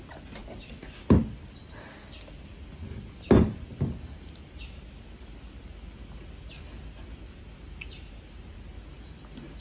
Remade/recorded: recorded